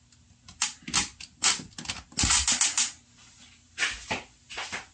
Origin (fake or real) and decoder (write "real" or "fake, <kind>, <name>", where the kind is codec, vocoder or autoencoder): real